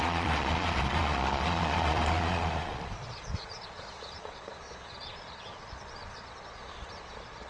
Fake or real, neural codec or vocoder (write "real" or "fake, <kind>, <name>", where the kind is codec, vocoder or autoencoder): fake, vocoder, Vocos